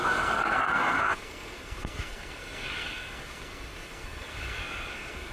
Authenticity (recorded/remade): remade